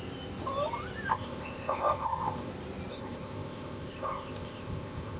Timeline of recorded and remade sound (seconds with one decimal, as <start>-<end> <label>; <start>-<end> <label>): 0.0-1.1 recorded; 1.1-2.5 remade; 2.5-2.9 recorded; 2.9-5.2 remade